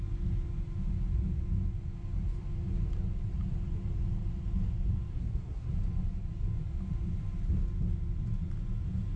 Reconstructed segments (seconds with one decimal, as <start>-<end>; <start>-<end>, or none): 5.1-5.7